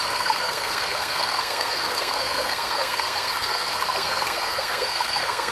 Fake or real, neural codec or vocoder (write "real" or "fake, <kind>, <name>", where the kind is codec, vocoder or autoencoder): fake, codec, SNAC